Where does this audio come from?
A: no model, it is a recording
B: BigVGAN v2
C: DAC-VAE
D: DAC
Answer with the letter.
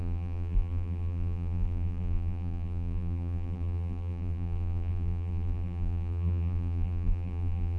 B